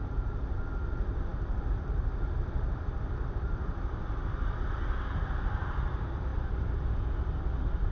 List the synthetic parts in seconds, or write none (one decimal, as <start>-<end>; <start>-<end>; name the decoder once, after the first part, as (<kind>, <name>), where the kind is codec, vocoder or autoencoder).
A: 0.0-7.9 (vocoder, BigVGAN v2)